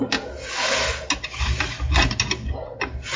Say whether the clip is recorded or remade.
recorded